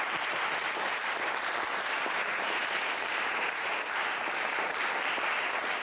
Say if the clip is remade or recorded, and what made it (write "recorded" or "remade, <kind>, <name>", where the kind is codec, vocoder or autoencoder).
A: remade, vocoder, BigVGAN v2